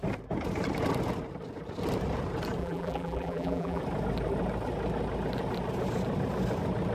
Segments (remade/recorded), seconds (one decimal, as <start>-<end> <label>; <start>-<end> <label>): 0.0-2.6 recorded; 2.6-3.8 remade; 3.8-6.9 recorded